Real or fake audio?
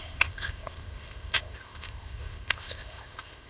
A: fake